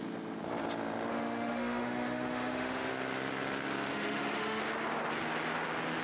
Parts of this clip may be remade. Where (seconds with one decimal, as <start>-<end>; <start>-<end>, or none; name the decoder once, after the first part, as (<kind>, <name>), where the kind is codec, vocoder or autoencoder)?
1.1-2.9 (autoencoder, DAC-VAE); 3.9-4.6